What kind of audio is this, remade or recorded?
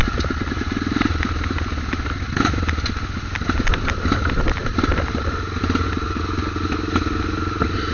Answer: recorded